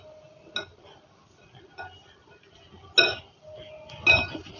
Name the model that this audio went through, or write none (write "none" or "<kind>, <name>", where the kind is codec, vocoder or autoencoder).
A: none